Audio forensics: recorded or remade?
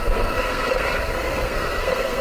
remade